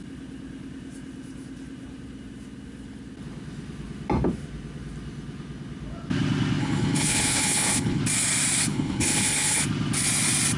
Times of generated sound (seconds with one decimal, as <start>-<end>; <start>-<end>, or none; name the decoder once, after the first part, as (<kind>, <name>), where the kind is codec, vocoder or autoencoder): 6.6-8.0 (codec, HILCodec); 8.7-9.6